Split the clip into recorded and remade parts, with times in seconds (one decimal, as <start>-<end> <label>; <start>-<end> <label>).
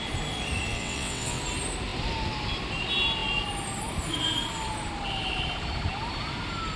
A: 0.0-0.7 recorded; 0.7-1.4 remade; 1.4-6.8 recorded